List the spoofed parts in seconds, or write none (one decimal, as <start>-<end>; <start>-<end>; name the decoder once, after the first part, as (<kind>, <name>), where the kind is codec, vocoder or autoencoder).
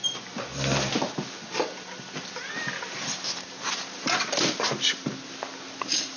none